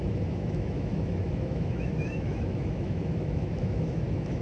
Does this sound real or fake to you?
fake